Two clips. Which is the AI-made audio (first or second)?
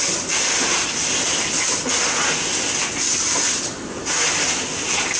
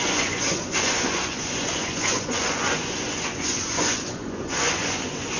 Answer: second